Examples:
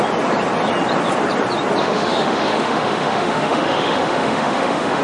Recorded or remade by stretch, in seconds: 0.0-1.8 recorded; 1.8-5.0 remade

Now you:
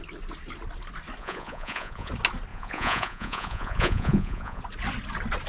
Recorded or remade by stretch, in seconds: 0.0-1.2 recorded; 1.2-2.1 remade; 2.1-2.5 recorded; 2.5-4.6 remade; 4.6-5.5 recorded

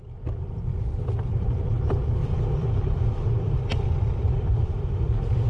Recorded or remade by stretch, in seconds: 0.0-2.2 recorded; 2.2-5.5 remade

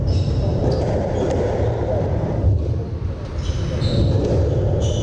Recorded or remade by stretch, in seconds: 0.0-0.5 recorded; 0.5-3.5 remade; 3.5-5.0 recorded